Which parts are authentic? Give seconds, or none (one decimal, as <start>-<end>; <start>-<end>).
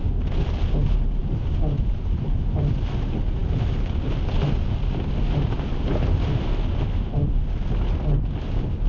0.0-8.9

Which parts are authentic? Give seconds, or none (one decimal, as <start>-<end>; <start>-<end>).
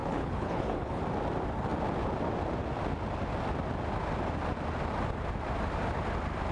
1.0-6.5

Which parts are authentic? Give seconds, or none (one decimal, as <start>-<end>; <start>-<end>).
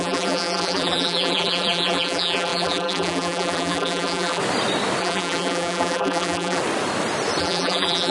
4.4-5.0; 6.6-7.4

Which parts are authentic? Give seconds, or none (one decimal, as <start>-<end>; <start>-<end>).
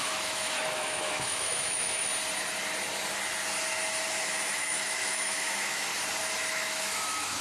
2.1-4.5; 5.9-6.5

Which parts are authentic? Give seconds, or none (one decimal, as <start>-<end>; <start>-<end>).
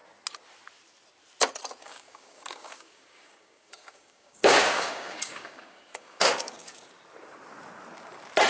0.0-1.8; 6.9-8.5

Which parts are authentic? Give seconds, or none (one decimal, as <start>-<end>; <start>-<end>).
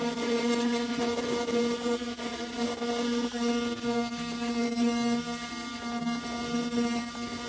0.0-1.0; 2.8-7.5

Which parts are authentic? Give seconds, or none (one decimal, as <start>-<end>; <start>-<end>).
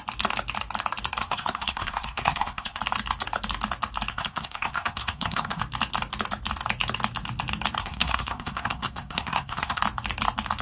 0.0-1.2; 2.8-4.1; 5.6-7.8; 9.8-10.6